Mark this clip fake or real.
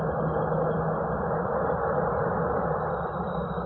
real